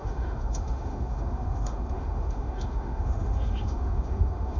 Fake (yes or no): yes